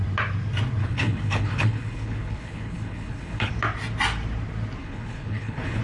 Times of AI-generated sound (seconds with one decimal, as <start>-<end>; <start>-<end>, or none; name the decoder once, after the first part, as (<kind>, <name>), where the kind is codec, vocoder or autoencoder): 0.8-3.5 (codec, HILCodec); 4.8-5.8